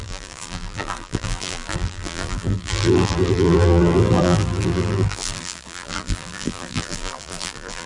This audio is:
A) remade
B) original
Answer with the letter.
A